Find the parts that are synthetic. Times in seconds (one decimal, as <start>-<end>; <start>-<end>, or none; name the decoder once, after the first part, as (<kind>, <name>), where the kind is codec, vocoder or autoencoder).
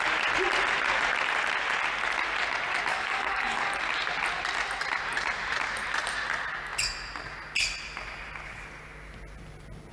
2.9-3.7 (codec, DAC)